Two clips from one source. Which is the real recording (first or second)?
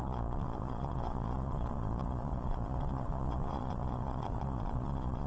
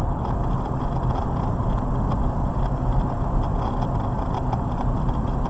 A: second